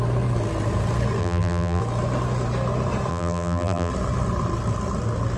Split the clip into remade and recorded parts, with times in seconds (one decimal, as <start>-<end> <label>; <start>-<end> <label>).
0.0-1.2 recorded; 1.2-1.8 remade; 1.8-3.1 recorded; 3.1-3.9 remade; 3.9-5.4 recorded